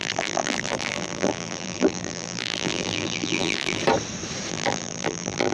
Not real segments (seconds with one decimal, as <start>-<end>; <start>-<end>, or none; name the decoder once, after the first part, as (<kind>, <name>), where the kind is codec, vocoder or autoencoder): 0.0-3.8 (vocoder, BigVGAN v2); 4.5-5.5